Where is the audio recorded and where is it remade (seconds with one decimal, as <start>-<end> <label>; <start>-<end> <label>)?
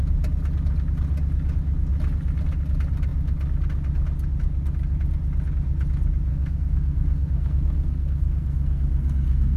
0.0-6.3 recorded; 6.3-9.6 remade